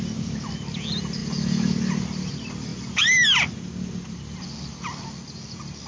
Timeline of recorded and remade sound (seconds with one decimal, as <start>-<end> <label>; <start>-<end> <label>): 0.0-5.9 recorded